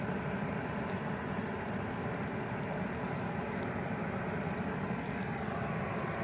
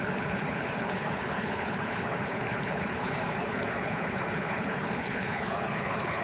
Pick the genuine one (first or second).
first